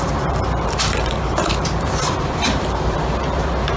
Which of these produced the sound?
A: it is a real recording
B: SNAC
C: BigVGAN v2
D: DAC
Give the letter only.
C